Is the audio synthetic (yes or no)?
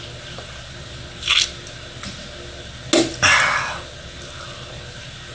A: no